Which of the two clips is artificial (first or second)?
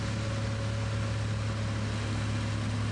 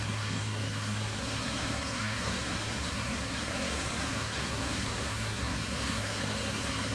second